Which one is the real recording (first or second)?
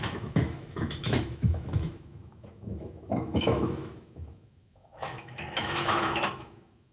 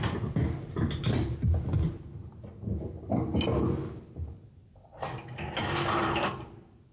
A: second